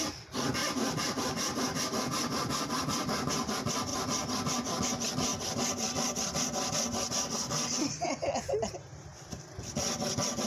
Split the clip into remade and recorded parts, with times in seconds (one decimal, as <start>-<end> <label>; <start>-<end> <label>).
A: 0.0-0.6 recorded; 0.6-1.8 remade; 1.8-10.5 recorded